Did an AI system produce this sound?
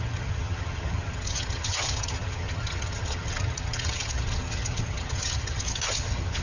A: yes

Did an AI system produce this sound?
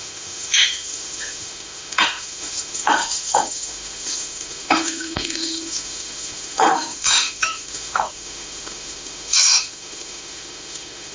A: yes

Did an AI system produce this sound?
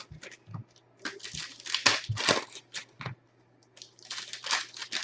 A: no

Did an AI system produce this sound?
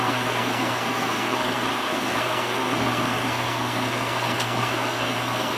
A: yes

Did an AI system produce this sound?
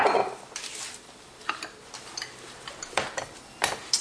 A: no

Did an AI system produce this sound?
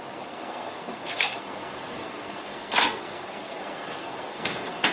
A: yes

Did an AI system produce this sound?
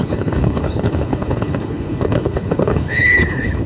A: yes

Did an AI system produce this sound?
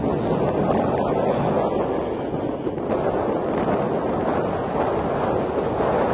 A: no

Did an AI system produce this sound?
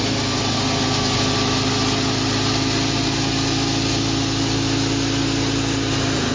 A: no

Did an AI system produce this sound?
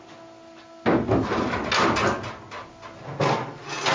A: no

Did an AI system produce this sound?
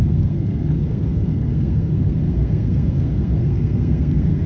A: yes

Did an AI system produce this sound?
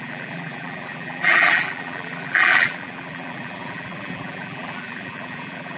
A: yes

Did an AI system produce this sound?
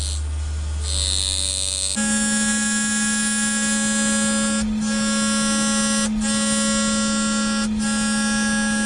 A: no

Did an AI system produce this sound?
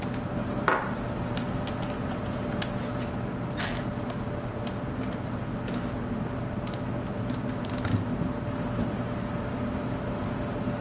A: no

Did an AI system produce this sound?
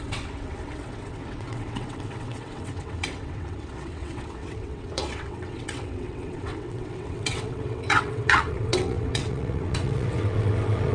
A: yes